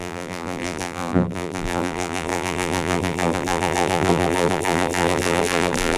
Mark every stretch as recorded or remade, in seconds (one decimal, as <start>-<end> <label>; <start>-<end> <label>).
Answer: 0.0-6.0 remade